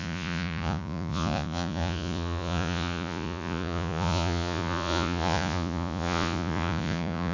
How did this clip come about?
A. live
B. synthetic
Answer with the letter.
B